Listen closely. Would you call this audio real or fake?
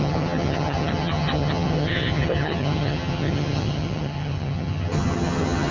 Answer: fake